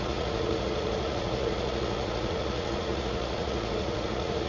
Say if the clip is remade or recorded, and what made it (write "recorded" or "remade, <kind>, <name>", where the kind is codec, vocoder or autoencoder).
remade, vocoder, Vocos